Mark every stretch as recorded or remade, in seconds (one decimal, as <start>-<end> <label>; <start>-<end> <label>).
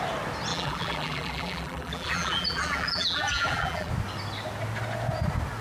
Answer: 0.0-0.5 recorded; 0.5-3.9 remade; 3.9-5.6 recorded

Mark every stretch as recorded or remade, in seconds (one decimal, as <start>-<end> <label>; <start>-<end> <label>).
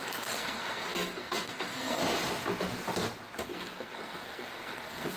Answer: 0.0-2.0 remade; 2.0-3.4 recorded; 3.4-5.2 remade